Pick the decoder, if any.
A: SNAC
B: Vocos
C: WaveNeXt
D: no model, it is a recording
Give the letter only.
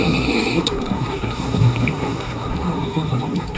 A